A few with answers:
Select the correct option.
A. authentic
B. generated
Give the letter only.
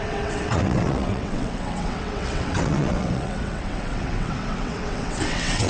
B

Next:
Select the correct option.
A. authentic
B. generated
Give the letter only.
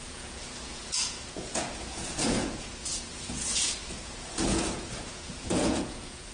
B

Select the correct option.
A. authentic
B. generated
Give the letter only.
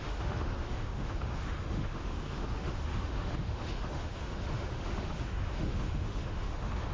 B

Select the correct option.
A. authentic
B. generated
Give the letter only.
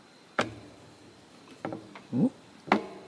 A